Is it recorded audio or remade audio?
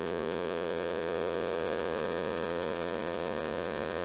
remade